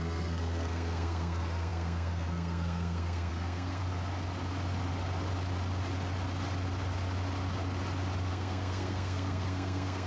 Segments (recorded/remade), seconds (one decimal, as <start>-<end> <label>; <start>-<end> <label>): 0.0-3.8 remade; 3.8-8.3 recorded; 8.3-10.1 remade

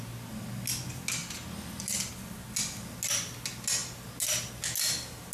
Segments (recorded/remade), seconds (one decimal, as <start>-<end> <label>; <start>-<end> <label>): 0.0-5.3 recorded

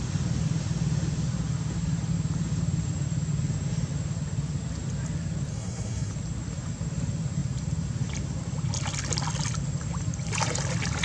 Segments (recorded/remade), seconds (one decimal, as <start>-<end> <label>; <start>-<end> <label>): 0.0-5.5 recorded; 5.5-6.1 remade; 6.1-11.0 recorded

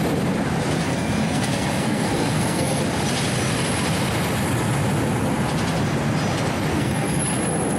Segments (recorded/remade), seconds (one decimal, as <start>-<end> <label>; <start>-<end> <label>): 0.0-0.9 recorded; 0.9-2.8 remade; 2.8-6.7 recorded; 6.7-7.2 remade; 7.2-7.8 recorded